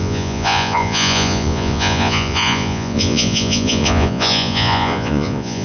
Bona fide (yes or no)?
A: no